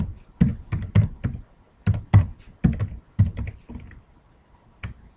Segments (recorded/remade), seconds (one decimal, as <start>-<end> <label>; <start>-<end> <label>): 0.0-5.2 recorded